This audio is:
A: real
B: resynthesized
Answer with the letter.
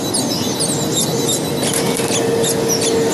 A